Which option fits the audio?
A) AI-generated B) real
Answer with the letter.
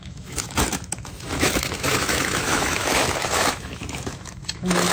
A